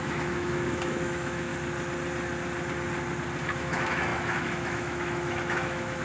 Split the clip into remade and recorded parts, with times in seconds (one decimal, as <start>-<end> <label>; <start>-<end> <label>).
0.0-1.5 remade; 1.5-3.4 recorded; 3.4-6.0 remade